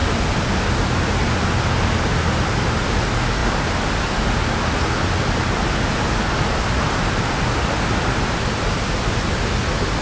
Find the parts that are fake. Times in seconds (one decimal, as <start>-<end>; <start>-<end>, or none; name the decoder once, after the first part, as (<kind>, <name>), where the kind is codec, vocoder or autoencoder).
none

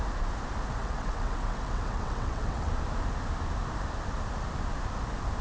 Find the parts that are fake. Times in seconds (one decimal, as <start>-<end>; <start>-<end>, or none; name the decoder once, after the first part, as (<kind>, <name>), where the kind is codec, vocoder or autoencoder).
0.8-2.7 (vocoder, WaveNeXt)